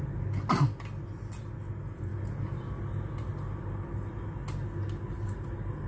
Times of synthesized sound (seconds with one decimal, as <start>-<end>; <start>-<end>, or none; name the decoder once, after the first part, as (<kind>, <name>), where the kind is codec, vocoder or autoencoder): none